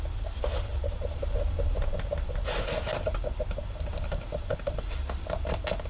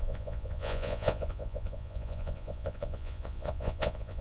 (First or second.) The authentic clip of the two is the first